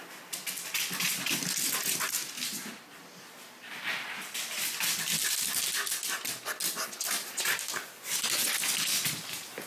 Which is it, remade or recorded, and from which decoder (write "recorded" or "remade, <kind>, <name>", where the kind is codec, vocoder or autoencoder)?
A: recorded